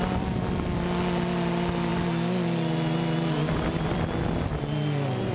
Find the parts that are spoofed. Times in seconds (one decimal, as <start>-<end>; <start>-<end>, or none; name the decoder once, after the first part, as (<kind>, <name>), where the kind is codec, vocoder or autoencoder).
none